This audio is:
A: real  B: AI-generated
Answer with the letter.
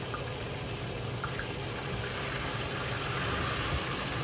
A